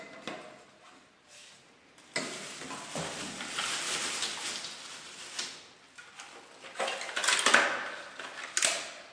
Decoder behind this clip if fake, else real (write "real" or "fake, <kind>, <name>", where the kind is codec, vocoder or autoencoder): real